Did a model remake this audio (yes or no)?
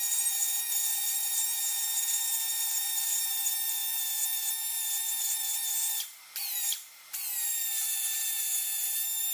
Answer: yes